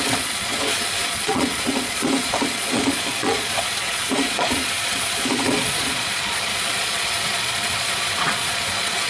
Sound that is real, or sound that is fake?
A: fake